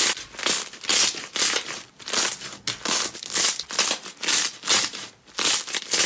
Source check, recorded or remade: recorded